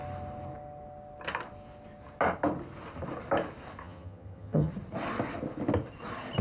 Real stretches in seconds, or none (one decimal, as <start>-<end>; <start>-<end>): 0.0-3.8; 4.7-6.4